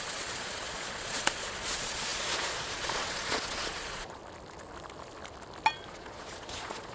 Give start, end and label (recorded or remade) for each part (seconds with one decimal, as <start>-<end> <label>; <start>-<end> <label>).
0.0-4.2 remade; 4.2-5.9 recorded; 5.9-6.9 remade